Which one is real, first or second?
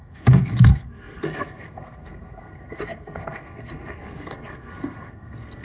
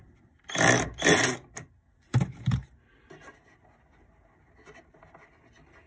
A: second